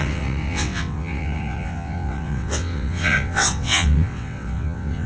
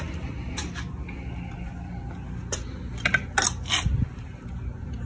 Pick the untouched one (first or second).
second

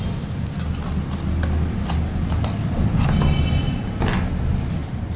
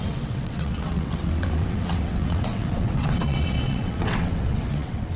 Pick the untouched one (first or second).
first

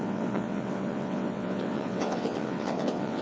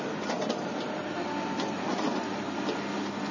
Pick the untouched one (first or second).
second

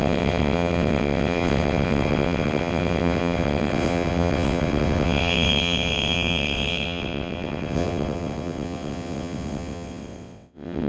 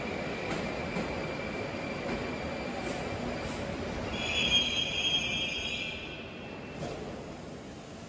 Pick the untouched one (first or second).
second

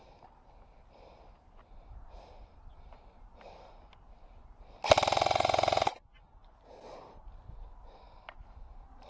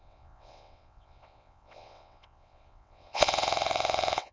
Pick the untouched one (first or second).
first